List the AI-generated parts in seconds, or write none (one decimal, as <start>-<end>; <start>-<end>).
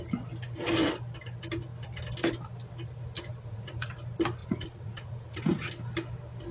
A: 3.4-3.9; 4.4-5.7